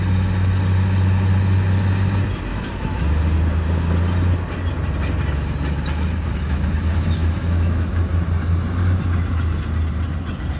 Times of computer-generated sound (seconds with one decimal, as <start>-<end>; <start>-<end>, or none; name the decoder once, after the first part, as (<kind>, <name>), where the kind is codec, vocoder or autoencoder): 2.5-3.0 (autoencoder, DAC-VAE); 7.2-8.0